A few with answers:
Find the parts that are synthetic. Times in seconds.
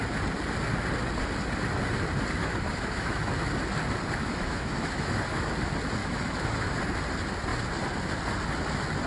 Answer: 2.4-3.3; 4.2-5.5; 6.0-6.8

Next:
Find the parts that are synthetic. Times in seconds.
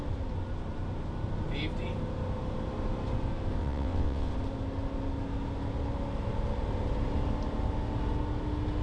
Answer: 3.6-4.3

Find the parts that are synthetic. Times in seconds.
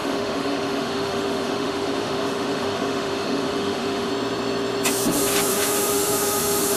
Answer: 0.0-4.1; 5.5-6.8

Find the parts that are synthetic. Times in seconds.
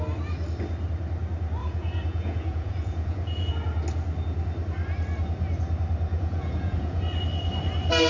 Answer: 1.6-3.5; 6.1-7.0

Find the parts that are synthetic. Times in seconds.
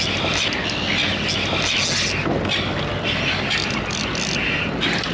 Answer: none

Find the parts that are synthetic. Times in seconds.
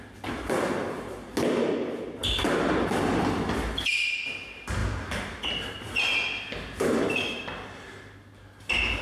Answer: none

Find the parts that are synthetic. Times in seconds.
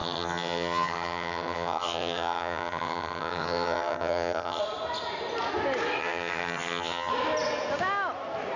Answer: 0.0-4.6; 6.0-7.1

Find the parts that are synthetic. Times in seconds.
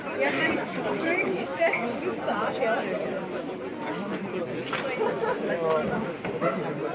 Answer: none